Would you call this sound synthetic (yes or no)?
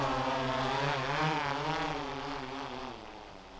no